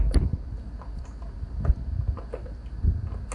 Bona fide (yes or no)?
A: yes